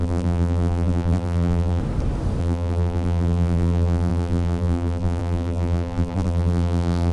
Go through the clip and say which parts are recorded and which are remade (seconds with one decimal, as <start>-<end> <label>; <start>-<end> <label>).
0.0-1.8 remade; 1.8-2.4 recorded; 2.4-7.1 remade